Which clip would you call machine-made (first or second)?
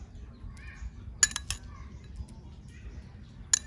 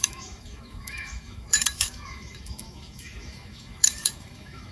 second